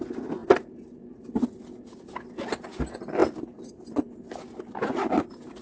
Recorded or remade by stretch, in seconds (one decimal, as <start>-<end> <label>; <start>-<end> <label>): 0.0-5.6 recorded